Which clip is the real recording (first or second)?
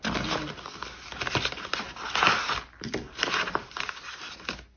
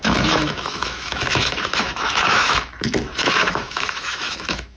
first